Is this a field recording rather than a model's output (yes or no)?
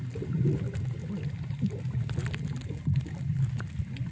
yes